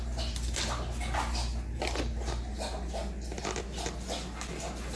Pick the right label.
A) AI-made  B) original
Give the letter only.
B